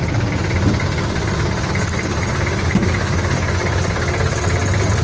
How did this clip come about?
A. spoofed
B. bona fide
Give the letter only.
B